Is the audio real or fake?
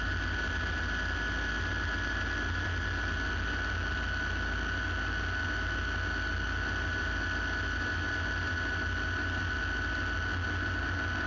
real